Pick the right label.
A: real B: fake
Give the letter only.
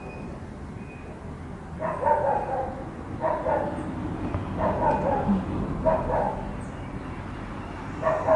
A